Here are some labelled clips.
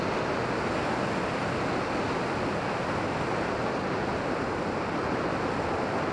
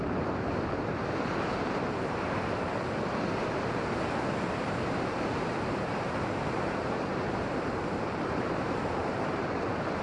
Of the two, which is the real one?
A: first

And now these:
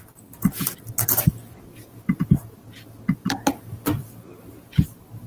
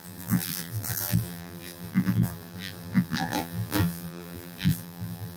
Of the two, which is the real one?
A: first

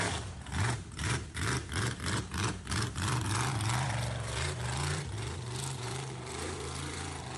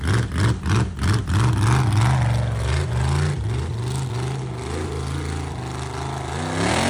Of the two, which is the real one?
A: second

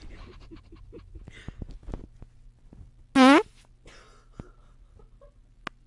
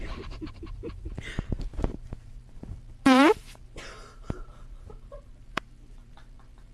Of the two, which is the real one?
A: first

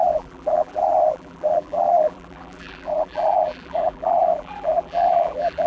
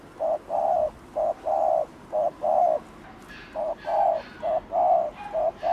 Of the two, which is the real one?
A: second